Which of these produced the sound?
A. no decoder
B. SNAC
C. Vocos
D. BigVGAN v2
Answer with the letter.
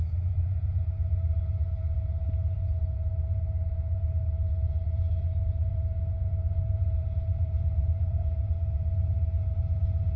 C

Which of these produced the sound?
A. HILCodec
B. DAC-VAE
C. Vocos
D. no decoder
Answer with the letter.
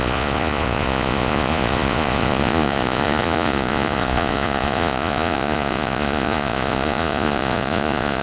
C